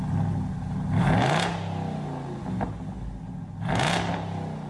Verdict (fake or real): real